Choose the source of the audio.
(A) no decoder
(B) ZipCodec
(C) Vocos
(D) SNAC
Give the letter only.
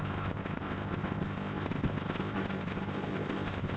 B